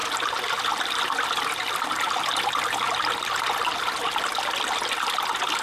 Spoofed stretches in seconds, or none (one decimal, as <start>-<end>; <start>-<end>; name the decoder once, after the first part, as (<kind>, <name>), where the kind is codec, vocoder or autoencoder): none